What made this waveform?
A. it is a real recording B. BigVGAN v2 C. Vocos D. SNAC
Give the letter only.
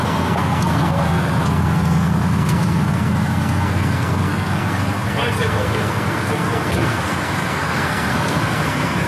D